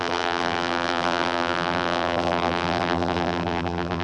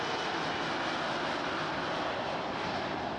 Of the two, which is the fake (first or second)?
first